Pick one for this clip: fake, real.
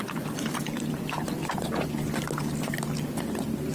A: real